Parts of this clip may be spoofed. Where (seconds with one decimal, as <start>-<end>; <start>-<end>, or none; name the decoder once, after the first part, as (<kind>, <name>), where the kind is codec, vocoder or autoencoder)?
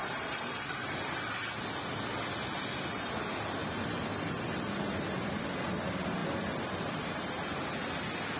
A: 0.0-1.6 (vocoder, BigVGAN v2); 3.6-4.9